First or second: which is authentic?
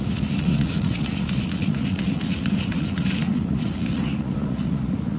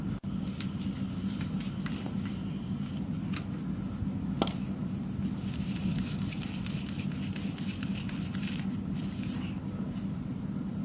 second